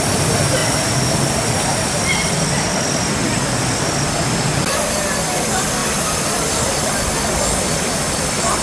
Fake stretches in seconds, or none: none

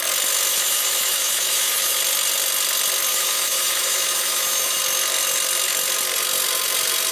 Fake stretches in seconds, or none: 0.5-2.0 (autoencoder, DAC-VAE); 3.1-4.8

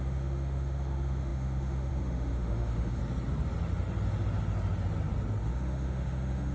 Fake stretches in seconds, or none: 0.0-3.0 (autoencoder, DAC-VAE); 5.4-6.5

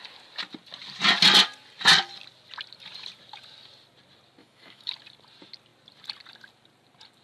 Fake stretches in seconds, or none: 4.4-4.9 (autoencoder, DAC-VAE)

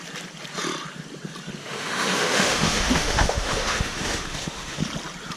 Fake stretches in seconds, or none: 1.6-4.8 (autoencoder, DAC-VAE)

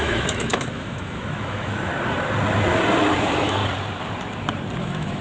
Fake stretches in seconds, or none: 0.0-1.9 (autoencoder, DAC-VAE); 3.2-3.6; 4.8-5.2

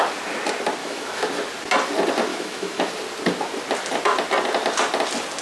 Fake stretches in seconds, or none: 0.8-1.3 (autoencoder, DAC-VAE); 2.3-2.9